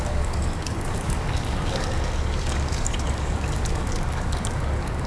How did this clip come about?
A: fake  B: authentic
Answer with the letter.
A